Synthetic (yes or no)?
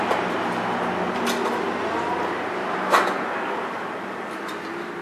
no